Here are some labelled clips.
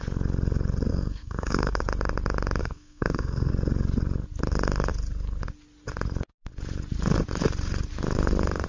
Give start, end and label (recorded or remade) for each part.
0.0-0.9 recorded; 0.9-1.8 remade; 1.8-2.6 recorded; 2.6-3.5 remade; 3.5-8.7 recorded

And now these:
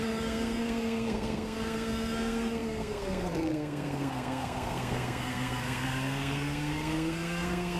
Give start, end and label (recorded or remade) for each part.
0.0-7.8 remade

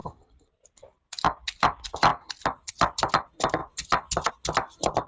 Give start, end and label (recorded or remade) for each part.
0.0-0.5 remade; 0.5-5.1 recorded

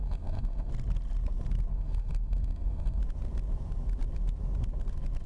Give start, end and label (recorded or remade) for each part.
0.0-0.7 remade; 0.7-1.7 recorded; 1.7-3.0 remade; 3.0-5.3 recorded

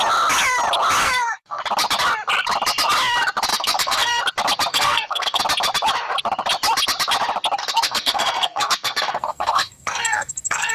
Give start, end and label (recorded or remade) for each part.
0.0-1.0 recorded; 1.0-1.6 remade; 1.6-3.5 recorded; 3.5-4.2 remade; 4.2-4.7 recorded; 4.7-5.4 remade; 5.4-7.6 recorded; 7.6-10.7 remade

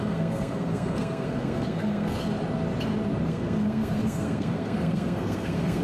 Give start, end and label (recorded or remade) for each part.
0.0-2.2 remade; 2.2-3.3 recorded; 3.3-5.8 remade

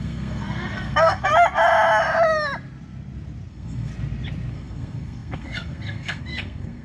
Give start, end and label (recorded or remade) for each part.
0.0-1.3 remade; 1.3-3.5 recorded; 3.5-3.9 remade; 3.9-4.5 recorded; 4.5-6.8 remade

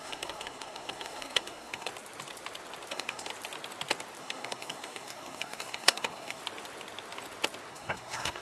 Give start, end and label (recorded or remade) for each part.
0.0-1.9 remade; 1.9-2.9 recorded; 2.9-3.3 remade; 3.3-4.2 recorded; 4.2-6.4 remade; 6.4-7.7 recorded; 7.7-8.4 remade